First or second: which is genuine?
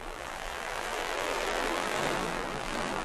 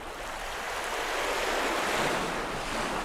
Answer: second